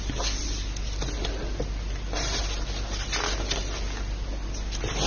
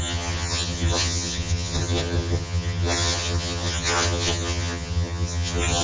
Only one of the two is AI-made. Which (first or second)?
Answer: second